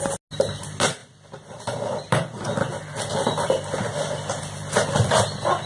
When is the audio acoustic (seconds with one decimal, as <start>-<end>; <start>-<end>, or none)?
0.0-5.7